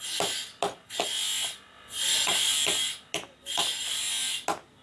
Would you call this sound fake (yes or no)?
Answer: no